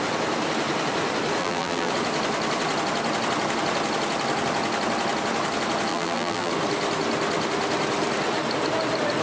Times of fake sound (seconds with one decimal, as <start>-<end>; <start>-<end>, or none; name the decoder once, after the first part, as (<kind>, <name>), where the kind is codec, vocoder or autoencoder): 1.4-1.9 (vocoder, BigVGAN v2); 5.9-6.5